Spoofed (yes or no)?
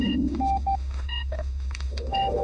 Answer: yes